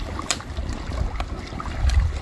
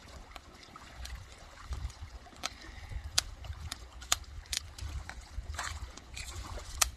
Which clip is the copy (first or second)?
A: second